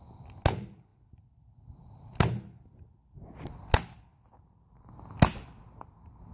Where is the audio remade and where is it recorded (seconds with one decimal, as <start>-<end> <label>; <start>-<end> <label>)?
0.0-6.3 recorded